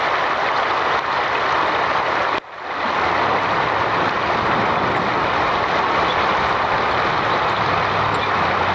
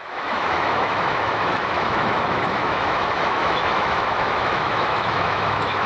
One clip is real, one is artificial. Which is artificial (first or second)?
second